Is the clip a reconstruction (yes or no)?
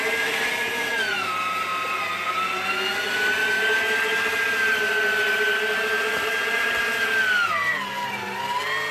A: no